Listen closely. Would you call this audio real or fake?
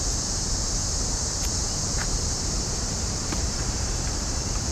fake